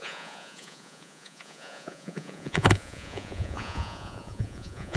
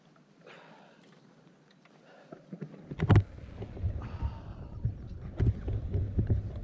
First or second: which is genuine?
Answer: second